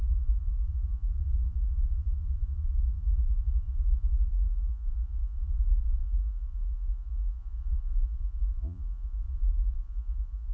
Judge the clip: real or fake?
fake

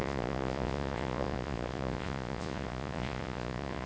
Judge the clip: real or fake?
fake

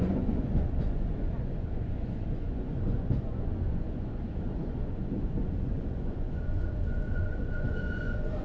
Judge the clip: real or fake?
fake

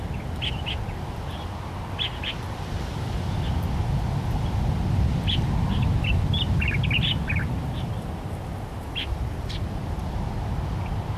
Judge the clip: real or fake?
real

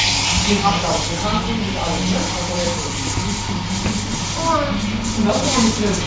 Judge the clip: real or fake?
real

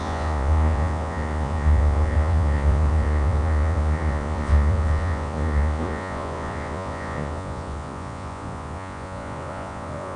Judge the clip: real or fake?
fake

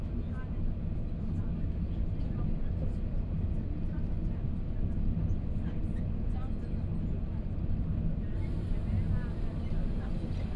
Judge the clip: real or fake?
real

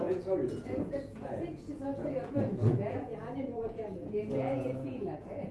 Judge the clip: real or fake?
fake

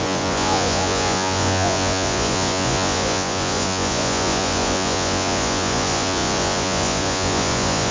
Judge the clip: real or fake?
fake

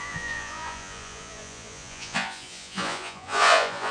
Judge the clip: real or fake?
fake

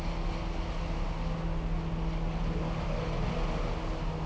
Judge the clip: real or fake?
real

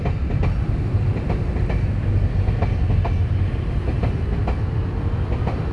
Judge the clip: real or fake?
real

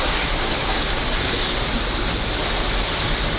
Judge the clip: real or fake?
real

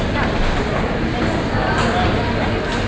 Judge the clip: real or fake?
real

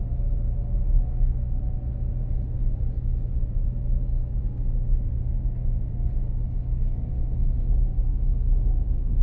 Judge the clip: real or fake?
real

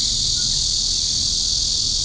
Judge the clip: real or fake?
real